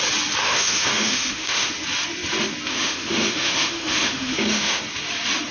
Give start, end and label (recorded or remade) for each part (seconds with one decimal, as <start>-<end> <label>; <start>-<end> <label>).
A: 0.0-0.4 recorded; 0.4-1.8 remade; 1.8-2.7 recorded; 2.7-4.8 remade; 4.8-5.5 recorded